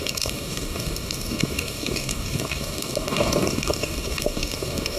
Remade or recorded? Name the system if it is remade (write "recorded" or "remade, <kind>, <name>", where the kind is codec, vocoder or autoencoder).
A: remade, codec, DAC